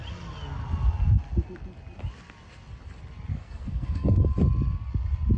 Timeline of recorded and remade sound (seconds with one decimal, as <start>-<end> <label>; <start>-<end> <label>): 0.0-3.3 recorded; 3.3-4.3 remade; 4.3-5.4 recorded